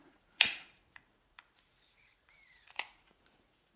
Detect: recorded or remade remade